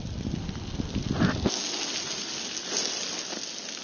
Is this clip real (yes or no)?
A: yes